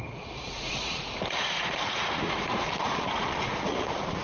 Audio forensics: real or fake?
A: fake